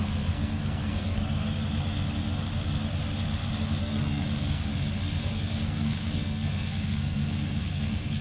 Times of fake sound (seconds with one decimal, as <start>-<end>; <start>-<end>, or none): 0.0-1.4; 3.8-4.7; 5.2-8.2